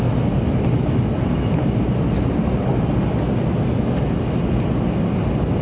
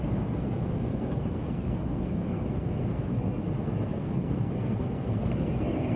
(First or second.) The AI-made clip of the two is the second